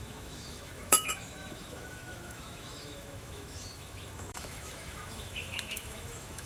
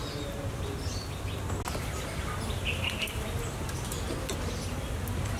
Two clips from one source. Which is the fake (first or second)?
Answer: first